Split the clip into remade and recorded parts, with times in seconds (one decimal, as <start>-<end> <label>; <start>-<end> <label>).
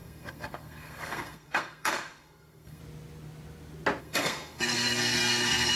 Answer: 0.0-2.8 remade; 2.8-4.0 recorded; 4.0-5.8 remade